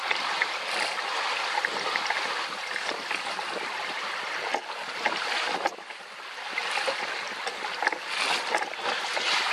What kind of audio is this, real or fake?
real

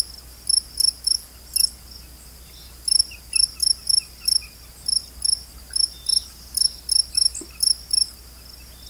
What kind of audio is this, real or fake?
real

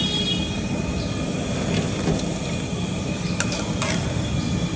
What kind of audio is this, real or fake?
real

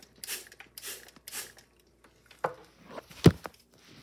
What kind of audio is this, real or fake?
real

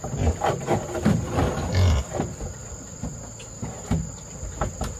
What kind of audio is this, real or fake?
real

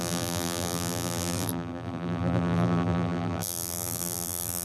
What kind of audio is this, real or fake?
fake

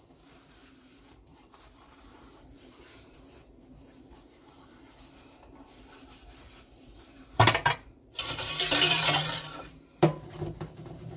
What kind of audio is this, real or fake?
fake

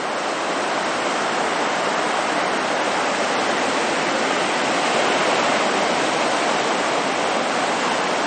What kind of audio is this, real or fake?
fake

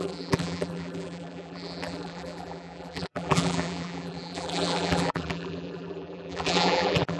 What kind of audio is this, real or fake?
fake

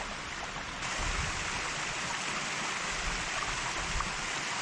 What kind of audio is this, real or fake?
real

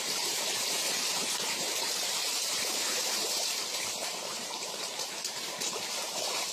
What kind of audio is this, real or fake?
fake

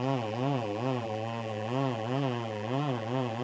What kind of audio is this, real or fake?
fake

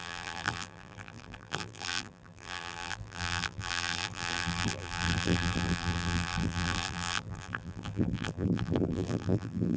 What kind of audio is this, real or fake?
fake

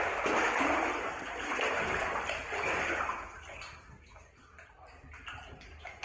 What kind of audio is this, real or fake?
real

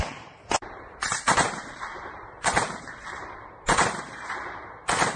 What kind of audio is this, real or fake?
fake